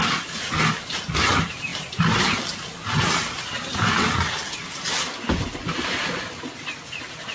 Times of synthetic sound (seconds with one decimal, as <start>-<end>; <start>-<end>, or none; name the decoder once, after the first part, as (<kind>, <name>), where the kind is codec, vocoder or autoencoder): none